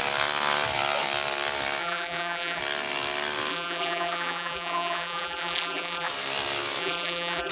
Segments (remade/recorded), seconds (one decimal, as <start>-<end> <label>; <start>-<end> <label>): 0.0-1.8 recorded; 1.8-2.6 remade; 2.6-3.5 recorded; 3.5-6.1 remade; 6.1-6.8 recorded; 6.8-7.5 remade